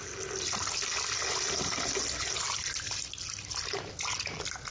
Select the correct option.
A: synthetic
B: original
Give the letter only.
B